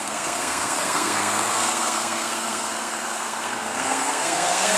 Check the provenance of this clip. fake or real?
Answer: fake